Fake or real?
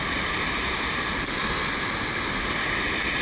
real